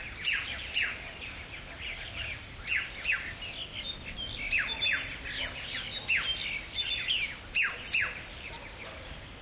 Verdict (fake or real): real